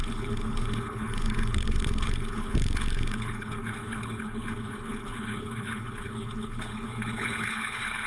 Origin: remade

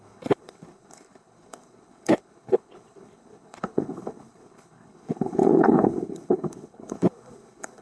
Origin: remade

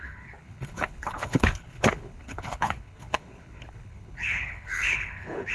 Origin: remade